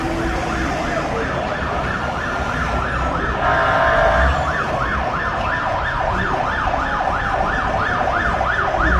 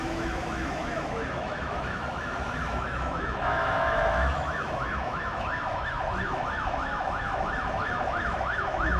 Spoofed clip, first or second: second